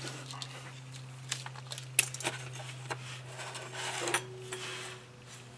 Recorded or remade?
recorded